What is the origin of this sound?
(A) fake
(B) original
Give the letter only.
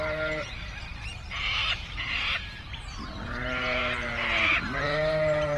A